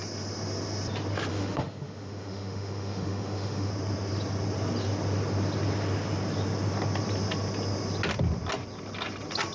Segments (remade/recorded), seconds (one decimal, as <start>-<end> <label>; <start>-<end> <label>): 0.0-1.3 recorded; 1.3-3.7 remade; 3.7-9.5 recorded